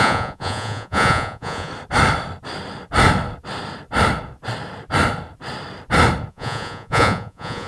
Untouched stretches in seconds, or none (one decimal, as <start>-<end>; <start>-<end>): 1.7-6.3